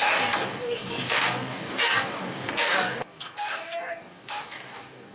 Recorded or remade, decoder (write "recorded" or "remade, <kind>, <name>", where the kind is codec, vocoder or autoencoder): remade, codec, DAC